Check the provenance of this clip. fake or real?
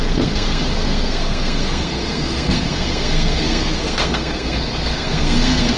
fake